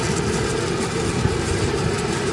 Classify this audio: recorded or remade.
recorded